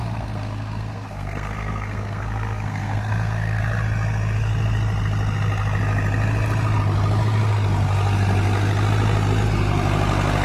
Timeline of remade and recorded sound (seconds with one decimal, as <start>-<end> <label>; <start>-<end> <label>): 0.0-3.6 remade; 3.6-10.4 recorded